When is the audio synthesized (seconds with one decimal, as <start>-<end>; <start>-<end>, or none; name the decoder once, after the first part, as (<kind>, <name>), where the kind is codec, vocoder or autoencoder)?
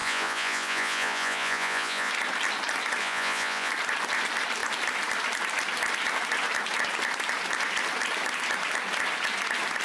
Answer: 0.0-2.1 (vocoder, Vocos); 3.0-3.7